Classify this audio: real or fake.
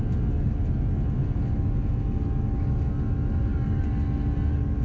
real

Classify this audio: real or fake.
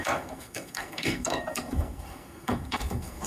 fake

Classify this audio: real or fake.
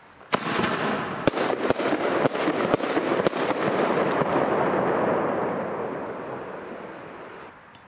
real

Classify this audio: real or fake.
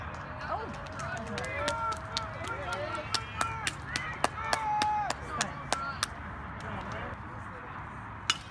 real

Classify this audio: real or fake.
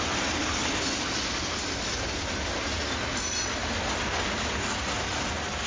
real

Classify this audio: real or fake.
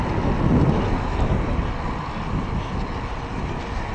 real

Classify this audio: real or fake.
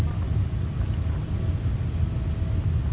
real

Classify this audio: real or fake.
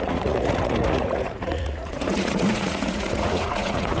fake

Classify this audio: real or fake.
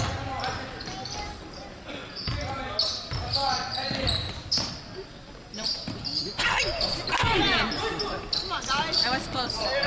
real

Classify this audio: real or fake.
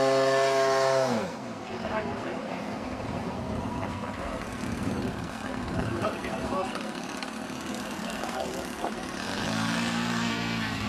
fake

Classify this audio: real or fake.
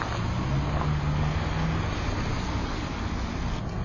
real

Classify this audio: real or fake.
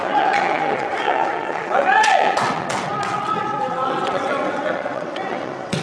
fake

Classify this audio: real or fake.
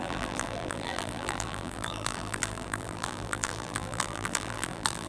fake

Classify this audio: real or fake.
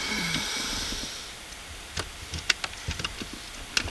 real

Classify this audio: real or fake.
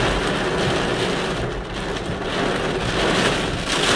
real